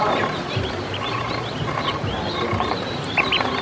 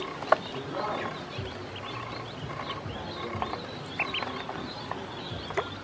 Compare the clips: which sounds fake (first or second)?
first